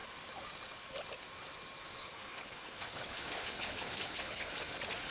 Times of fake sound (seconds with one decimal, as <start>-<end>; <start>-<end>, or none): 2.0-4.5